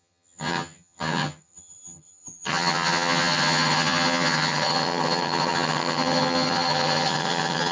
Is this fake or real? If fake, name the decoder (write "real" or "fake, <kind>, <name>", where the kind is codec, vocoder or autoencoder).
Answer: fake, vocoder, HiFi-GAN